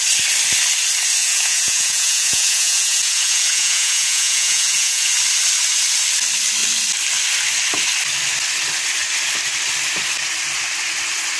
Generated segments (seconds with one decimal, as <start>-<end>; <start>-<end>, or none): 1.2-5.1